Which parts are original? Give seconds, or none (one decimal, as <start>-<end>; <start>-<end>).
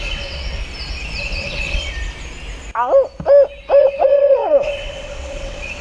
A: 0.6-1.2; 1.9-3.8